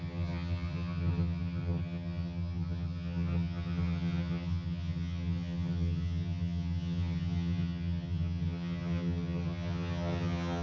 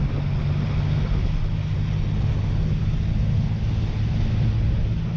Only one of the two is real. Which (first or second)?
second